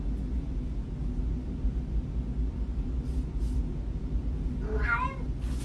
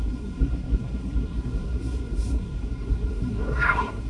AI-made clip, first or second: second